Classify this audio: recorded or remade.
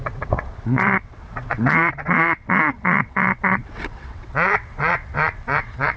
remade